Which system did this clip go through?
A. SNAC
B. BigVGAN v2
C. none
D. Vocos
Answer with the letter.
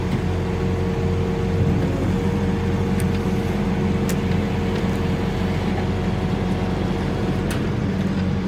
C